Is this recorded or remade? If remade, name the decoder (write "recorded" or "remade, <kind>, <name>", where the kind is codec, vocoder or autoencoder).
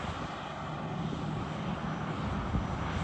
recorded